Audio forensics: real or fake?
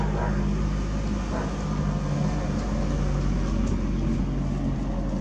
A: real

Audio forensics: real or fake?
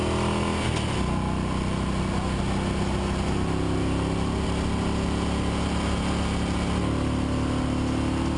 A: real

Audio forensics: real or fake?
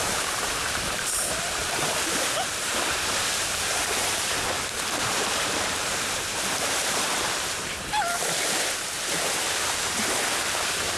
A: fake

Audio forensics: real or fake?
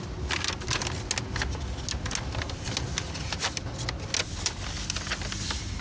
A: real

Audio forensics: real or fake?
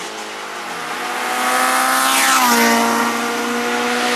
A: real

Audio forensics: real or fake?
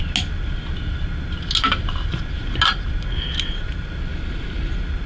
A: real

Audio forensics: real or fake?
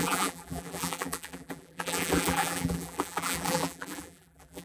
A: fake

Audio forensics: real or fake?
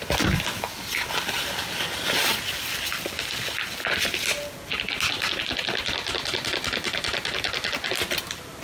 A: real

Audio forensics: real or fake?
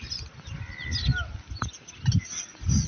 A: real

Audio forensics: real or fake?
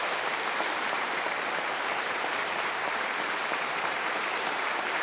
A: fake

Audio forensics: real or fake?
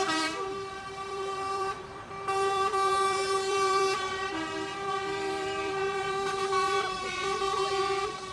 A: fake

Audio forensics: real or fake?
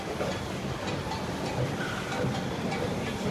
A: real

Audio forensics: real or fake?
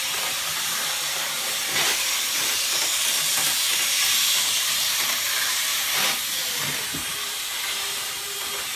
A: fake